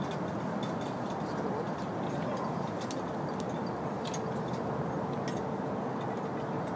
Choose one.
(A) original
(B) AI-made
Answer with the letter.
A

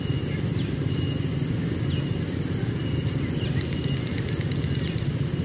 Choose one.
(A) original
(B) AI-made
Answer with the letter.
A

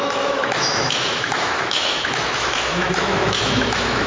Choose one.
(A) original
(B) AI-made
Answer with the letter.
B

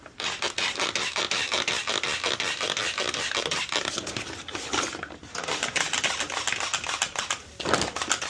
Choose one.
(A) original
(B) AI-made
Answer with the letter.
A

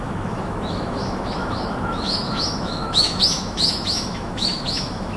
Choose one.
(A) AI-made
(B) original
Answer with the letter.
A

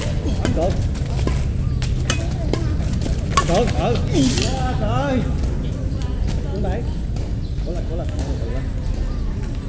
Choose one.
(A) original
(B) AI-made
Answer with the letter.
A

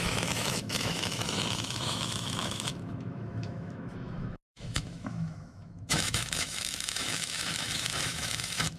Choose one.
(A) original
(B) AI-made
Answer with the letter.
B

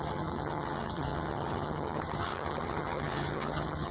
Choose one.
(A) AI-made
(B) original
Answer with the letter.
A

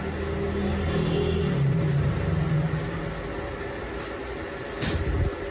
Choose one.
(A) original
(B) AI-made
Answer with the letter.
A